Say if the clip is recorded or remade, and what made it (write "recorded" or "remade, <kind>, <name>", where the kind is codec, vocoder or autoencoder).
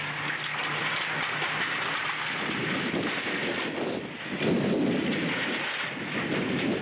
recorded